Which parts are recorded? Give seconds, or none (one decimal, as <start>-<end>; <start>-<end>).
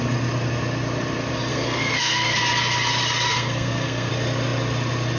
0.0-1.5; 2.4-3.3; 4.1-5.2